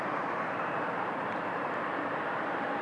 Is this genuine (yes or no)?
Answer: no